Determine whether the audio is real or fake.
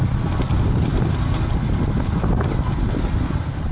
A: real